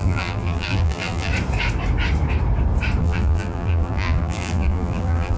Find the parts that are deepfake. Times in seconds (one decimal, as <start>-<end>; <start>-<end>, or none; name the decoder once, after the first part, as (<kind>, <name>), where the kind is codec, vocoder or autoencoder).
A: 0.0-1.3 (vocoder, BigVGAN v2); 3.0-5.4